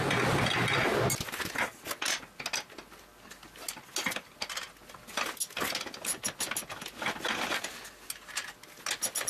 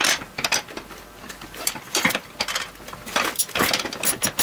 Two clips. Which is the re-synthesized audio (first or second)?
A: second